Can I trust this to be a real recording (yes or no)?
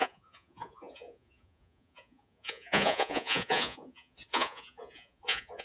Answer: no